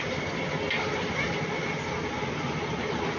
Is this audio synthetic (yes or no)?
no